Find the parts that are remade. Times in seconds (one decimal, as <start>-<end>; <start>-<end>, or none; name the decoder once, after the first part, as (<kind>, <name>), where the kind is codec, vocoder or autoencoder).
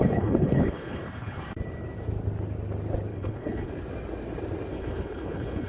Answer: 0.0-1.4 (codec, HILCodec); 3.1-3.7; 4.7-5.7